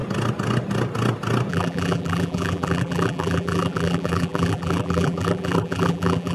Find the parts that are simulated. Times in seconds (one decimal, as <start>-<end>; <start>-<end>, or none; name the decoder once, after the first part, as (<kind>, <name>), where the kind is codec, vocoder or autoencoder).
1.5-6.3 (vocoder, BigVGAN v2)